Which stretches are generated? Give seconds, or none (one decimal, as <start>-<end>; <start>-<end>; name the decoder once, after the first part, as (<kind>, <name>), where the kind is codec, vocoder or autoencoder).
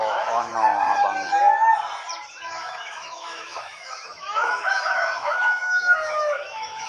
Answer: 0.0-0.5 (autoencoder, DAC-VAE); 2.4-6.9